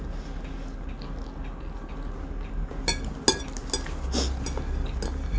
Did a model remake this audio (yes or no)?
no